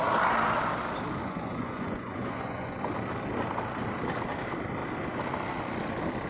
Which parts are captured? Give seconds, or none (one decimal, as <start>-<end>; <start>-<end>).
0.0-1.2; 2.8-6.3